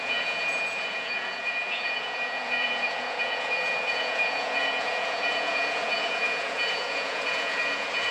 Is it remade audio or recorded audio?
remade